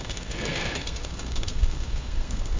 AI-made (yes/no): yes